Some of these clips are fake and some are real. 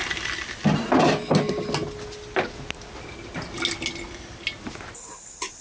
real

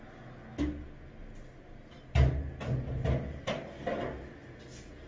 real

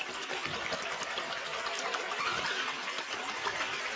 real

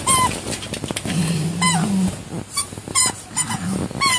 real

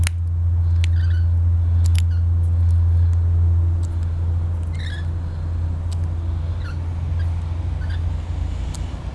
real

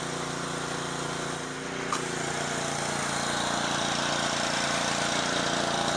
real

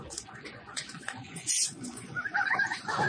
fake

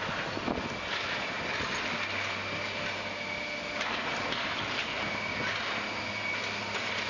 real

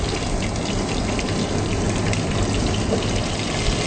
real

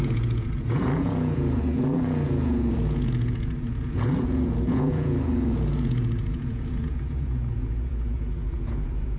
fake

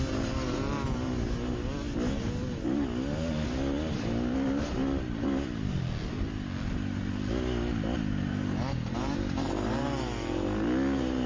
real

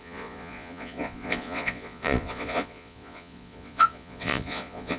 fake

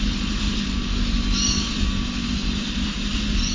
real